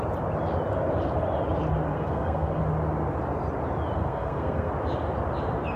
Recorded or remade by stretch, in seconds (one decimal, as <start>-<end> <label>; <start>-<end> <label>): 0.0-1.9 recorded; 1.9-2.6 remade; 2.6-4.0 recorded; 4.0-4.7 remade; 4.7-5.8 recorded